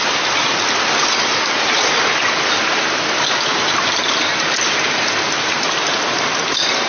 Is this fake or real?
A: real